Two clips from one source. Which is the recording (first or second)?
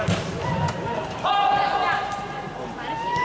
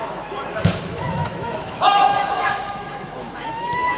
first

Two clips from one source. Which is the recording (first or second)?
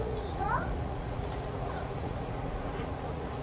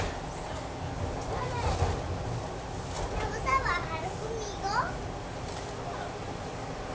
second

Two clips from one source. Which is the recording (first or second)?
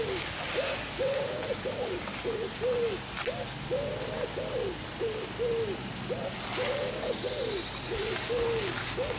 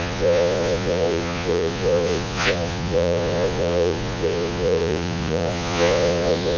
first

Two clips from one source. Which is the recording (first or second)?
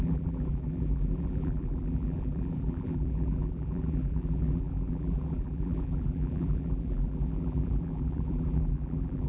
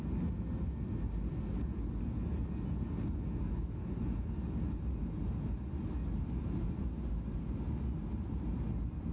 second